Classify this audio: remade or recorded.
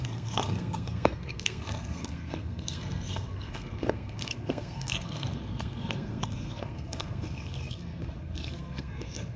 remade